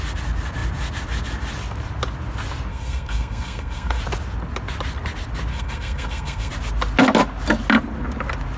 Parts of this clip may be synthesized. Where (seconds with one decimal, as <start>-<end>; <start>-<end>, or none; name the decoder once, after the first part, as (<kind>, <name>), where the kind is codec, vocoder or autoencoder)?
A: 2.7-4.0 (codec, SNAC); 5.5-6.5